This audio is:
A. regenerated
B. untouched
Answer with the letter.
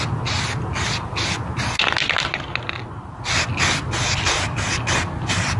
B